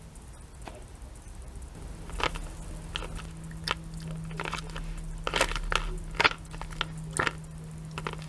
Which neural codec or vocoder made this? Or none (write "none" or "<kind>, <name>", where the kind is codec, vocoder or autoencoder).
none